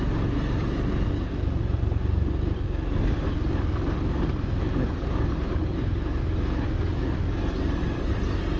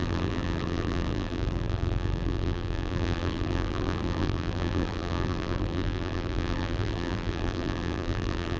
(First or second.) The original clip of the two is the first